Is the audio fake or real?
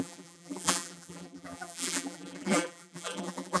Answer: fake